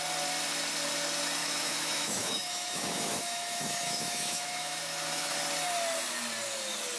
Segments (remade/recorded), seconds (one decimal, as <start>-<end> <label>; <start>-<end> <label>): 0.0-1.4 recorded; 1.4-5.4 remade; 5.4-7.0 recorded